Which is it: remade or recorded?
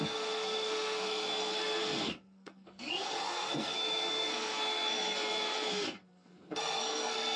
remade